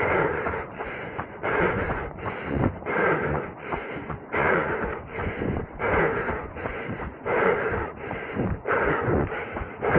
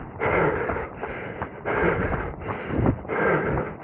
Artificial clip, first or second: first